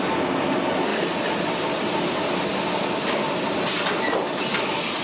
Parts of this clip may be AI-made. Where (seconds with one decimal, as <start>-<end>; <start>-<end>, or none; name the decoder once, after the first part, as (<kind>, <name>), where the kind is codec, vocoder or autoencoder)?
2.5-3.7 (vocoder, BigVGAN v2)